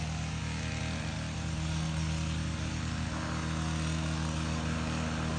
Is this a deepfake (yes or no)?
no